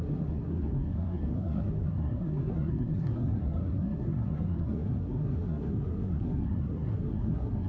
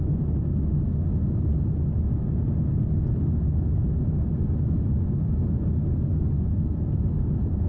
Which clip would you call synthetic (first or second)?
first